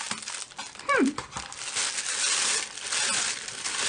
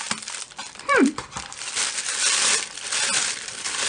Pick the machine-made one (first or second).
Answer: second